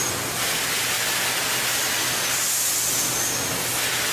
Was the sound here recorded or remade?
recorded